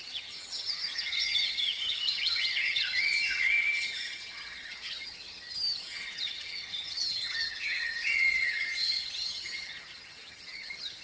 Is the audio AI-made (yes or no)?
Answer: yes